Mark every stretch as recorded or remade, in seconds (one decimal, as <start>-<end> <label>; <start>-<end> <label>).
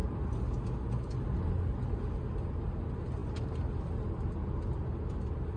0.0-5.6 recorded